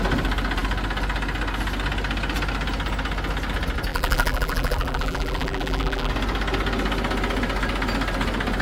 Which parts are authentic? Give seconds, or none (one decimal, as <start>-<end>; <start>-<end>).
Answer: 0.0-3.9; 6.1-8.6